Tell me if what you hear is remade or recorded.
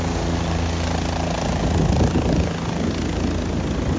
recorded